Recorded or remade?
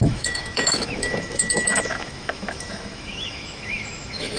remade